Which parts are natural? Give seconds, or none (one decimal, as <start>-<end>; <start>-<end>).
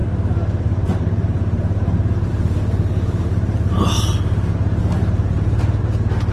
3.8-4.8; 5.8-6.3